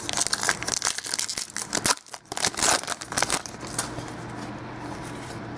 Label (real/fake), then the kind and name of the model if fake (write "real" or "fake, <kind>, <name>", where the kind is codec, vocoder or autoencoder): real